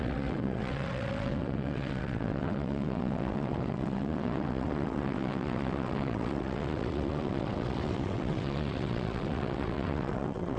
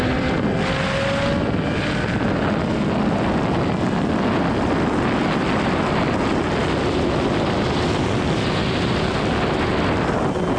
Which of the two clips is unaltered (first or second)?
second